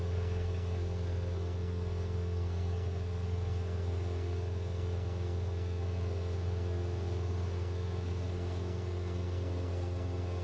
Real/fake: fake